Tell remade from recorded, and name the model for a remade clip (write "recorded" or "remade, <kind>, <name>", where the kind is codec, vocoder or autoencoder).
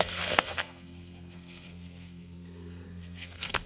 remade, codec, SNAC